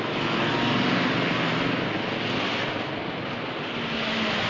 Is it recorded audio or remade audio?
recorded